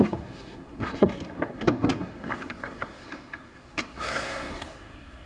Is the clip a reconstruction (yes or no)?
yes